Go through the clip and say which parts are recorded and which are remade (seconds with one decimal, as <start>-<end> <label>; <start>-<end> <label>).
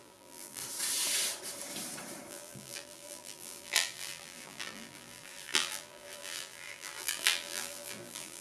0.0-0.6 remade; 0.6-2.3 recorded; 2.3-8.4 remade